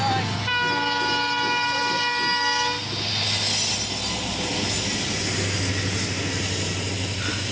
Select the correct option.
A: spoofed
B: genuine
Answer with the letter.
B